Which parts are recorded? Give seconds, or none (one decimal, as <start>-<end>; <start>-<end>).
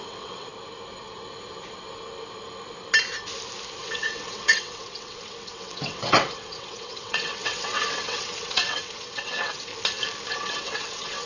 0.5-3.8; 9.7-10.3